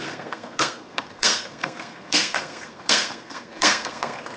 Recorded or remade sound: remade